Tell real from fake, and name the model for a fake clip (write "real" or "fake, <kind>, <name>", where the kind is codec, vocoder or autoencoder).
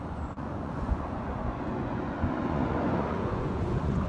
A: fake, vocoder, Vocos